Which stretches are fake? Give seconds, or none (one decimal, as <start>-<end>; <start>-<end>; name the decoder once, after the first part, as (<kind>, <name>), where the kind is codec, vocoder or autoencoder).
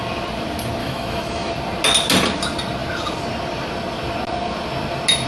0.8-1.5 (autoencoder, DAC-VAE)